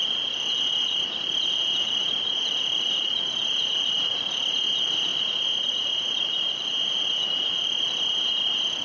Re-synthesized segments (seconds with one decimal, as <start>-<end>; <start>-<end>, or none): 5.1-6.9